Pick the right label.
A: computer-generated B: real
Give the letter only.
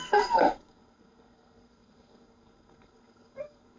A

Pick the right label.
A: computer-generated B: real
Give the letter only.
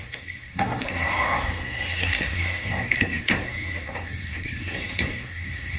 A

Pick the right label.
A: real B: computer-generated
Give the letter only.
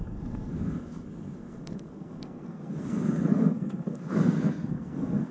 B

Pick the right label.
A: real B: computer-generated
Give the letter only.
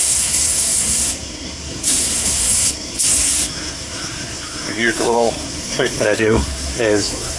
B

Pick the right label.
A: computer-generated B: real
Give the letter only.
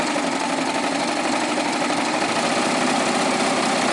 B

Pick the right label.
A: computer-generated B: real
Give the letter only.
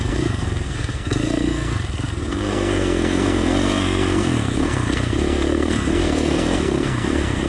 A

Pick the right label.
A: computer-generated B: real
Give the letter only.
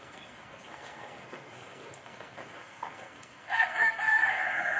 A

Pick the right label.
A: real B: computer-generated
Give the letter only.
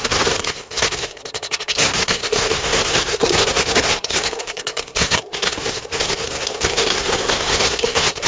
B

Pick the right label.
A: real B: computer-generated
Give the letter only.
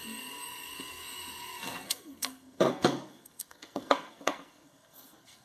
B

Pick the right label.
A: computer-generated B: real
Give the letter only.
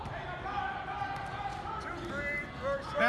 B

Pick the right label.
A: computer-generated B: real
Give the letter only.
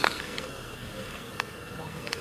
A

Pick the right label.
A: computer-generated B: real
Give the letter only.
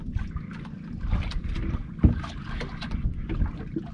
B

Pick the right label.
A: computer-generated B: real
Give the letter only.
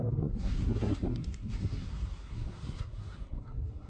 A